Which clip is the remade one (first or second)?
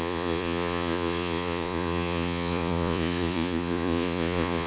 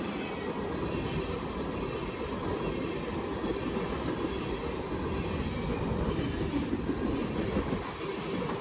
first